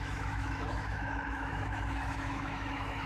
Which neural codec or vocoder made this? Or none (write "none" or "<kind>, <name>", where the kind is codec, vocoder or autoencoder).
autoencoder, DAC-VAE